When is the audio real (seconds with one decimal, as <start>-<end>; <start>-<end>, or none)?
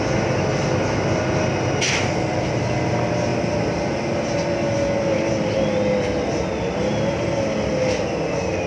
0.0-8.7